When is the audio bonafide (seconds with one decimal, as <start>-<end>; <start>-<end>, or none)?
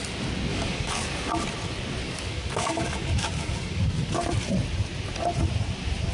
0.0-0.5; 1.3-2.0; 4.1-6.1